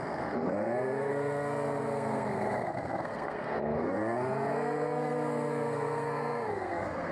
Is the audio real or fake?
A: fake